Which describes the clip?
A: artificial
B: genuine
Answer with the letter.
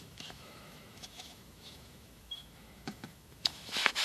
A